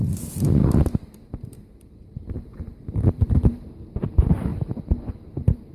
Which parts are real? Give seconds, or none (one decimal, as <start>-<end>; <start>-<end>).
0.6-1.3; 4.5-5.1